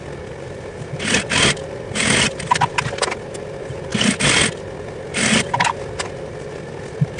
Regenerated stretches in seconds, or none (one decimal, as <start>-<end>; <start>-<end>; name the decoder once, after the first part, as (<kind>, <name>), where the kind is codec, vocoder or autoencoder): none